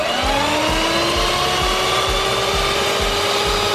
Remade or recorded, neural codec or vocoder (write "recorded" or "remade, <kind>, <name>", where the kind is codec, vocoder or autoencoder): recorded